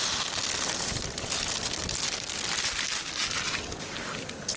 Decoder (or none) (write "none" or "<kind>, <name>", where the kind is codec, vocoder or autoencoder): none